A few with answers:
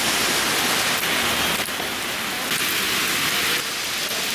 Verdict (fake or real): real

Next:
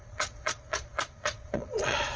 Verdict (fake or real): fake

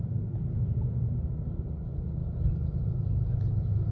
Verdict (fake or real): real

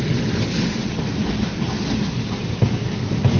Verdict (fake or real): real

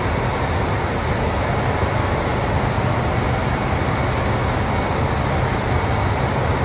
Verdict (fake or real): real